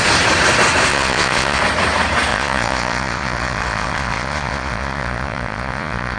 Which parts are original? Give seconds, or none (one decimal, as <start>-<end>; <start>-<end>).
0.0-0.9; 1.6-2.3